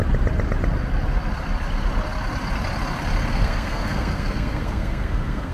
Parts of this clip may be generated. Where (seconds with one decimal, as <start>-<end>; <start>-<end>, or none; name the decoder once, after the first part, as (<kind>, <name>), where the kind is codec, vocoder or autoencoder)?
3.3-5.5 (codec, SNAC)